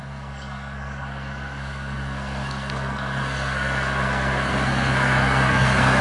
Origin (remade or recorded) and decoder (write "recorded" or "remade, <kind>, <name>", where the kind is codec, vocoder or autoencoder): remade, codec, SNAC